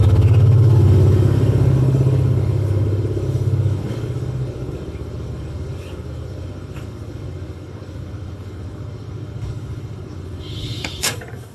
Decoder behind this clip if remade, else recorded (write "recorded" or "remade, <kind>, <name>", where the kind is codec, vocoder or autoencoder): remade, codec, DAC